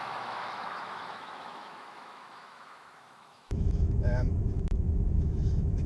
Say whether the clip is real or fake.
fake